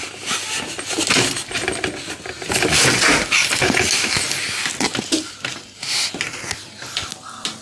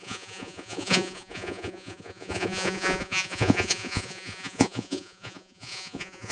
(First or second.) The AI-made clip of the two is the second